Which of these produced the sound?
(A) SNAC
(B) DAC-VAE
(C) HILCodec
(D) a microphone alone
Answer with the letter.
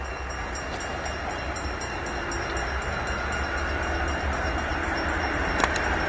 D